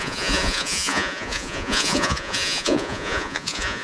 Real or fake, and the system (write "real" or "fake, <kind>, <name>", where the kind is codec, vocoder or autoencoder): fake, vocoder, Vocos